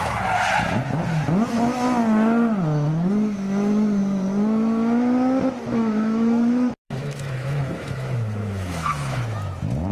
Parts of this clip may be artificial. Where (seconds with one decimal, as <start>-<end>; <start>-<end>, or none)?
5.7-9.2

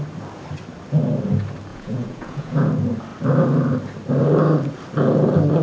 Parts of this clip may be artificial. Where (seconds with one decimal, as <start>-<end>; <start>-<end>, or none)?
1.7-2.7